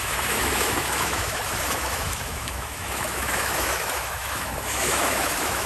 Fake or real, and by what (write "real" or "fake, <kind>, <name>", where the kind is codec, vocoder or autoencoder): fake, autoencoder, DAC-VAE